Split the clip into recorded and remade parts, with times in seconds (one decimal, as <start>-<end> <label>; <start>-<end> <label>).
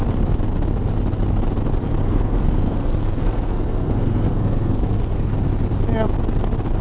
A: 0.0-2.0 recorded; 2.0-5.3 remade; 5.3-6.8 recorded